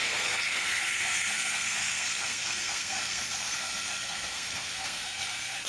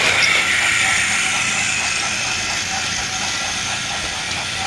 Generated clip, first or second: first